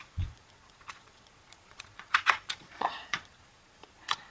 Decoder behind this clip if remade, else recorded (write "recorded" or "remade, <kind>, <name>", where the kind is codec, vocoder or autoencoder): remade, vocoder, Vocos